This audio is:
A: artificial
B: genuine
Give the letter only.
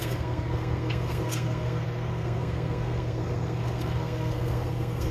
A